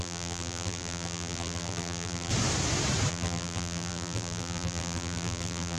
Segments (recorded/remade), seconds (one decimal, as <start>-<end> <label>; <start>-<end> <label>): 0.0-2.3 remade; 2.3-3.1 recorded; 3.1-5.8 remade

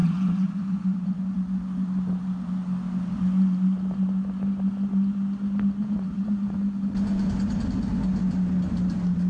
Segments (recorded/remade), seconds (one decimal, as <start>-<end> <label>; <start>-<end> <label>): 0.0-1.2 remade; 1.2-5.8 recorded; 5.8-6.6 remade; 6.6-9.3 recorded

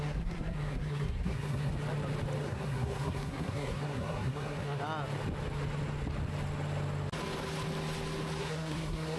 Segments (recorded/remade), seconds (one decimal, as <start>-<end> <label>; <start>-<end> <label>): 0.0-1.7 remade; 1.7-2.4 recorded; 2.4-4.8 remade; 4.8-8.4 recorded; 8.4-9.2 remade

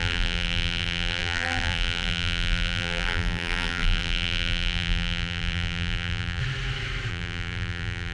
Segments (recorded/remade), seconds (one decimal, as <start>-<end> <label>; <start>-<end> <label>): 0.0-6.4 remade; 6.4-7.1 recorded; 7.1-8.1 remade